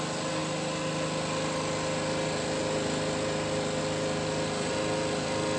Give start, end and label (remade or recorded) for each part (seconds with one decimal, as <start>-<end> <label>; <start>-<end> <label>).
0.0-5.6 recorded